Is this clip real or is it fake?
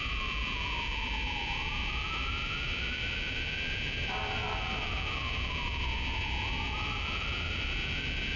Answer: fake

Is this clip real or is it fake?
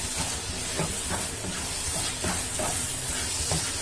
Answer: real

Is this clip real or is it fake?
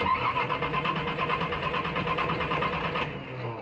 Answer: real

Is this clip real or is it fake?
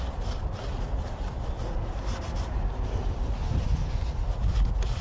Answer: real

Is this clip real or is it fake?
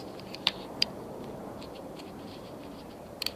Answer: fake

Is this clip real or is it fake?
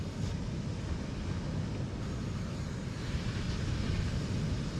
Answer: real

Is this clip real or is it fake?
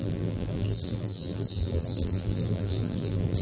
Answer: fake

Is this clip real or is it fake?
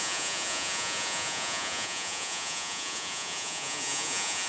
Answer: fake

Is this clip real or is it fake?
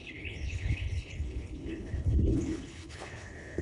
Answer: fake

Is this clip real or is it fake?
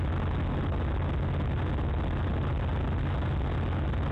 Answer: real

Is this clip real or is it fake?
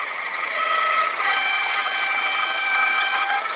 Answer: fake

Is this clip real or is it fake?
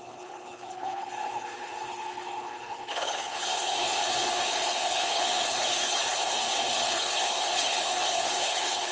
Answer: fake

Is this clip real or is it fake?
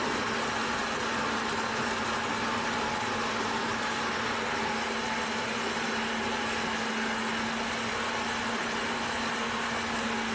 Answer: real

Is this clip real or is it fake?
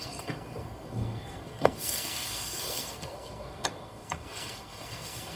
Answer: fake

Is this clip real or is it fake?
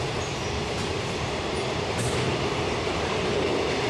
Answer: real